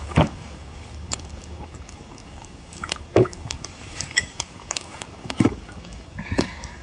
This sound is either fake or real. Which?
fake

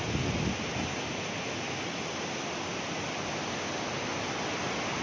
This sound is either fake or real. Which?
real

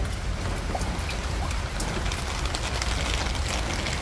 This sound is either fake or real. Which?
real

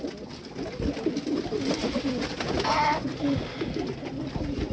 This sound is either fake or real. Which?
real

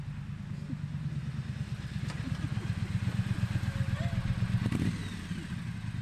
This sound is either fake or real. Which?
real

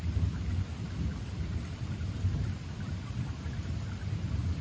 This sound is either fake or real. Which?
real